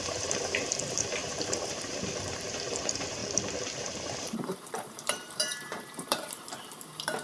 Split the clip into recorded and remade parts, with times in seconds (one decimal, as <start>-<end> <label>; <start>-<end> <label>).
0.0-3.2 remade; 3.2-4.2 recorded; 4.2-7.2 remade